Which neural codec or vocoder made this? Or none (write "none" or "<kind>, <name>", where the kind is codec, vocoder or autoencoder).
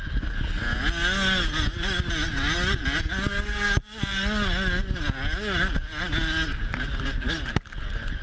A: none